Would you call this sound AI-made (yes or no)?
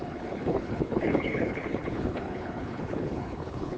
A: yes